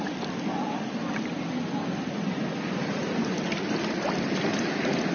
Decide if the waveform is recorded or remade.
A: recorded